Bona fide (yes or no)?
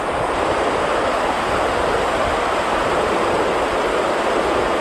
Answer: yes